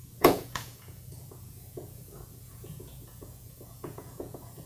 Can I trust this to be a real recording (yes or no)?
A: no